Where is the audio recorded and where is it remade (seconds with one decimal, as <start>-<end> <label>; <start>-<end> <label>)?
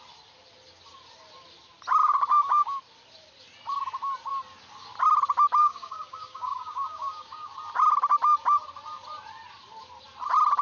0.0-2.0 recorded; 2.0-2.8 remade; 2.8-5.6 recorded; 5.6-7.5 remade; 7.5-10.6 recorded